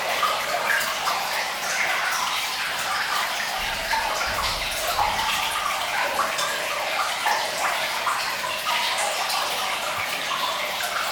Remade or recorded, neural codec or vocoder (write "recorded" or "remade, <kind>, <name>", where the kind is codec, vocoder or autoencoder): recorded